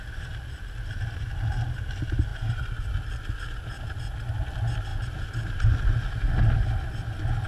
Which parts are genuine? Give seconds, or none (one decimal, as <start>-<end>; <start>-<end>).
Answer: 0.0-2.3; 3.0-7.5